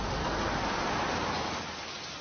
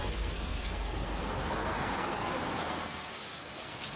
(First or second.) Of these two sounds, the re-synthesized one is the second